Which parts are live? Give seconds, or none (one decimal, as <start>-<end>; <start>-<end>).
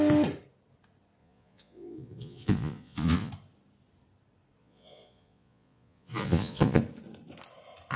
0.0-1.2; 3.3-4.6; 6.8-8.0